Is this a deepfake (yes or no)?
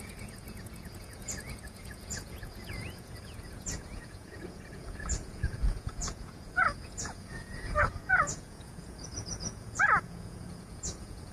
yes